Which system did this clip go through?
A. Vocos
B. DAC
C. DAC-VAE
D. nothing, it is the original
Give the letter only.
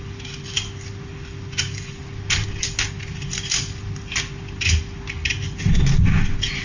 D